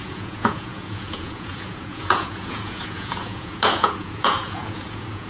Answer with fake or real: fake